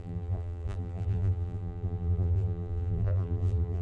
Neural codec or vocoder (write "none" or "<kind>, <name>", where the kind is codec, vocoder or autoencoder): vocoder, BigVGAN v2